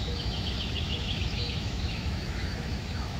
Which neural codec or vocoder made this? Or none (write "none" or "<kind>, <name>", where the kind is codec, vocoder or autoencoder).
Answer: autoencoder, DAC-VAE